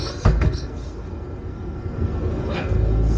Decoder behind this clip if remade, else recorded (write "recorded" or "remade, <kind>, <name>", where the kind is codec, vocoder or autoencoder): remade, codec, SNAC